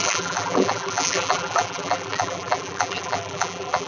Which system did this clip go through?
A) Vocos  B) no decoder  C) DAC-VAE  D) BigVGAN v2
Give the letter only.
D